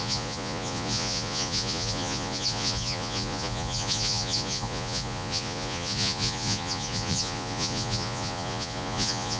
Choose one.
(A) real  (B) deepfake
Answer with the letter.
B